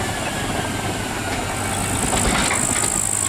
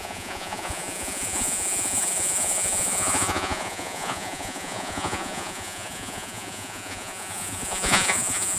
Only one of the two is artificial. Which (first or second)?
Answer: second